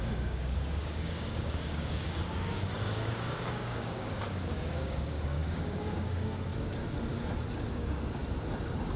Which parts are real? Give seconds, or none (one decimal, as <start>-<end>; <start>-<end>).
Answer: 6.5-7.7; 8.2-9.0